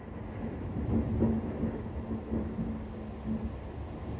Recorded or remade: recorded